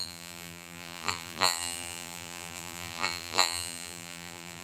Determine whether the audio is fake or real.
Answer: fake